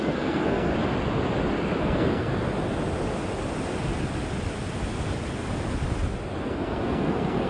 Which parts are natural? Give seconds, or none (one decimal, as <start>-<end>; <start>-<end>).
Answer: 0.7-1.8; 2.3-6.4